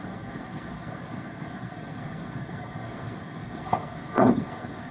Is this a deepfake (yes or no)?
yes